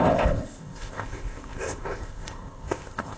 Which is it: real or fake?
fake